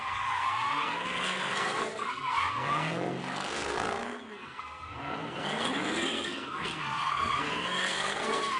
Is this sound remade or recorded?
remade